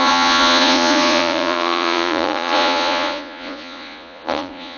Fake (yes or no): yes